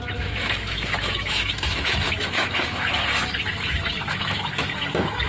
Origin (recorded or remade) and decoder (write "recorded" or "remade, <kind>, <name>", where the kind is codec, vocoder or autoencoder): remade, autoencoder, DAC-VAE